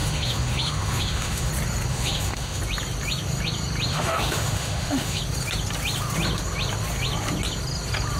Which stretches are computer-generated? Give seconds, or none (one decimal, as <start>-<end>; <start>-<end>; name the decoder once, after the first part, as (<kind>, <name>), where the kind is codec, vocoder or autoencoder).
0.0-1.5 (autoencoder, DAC-VAE); 1.9-2.6; 3.9-5.2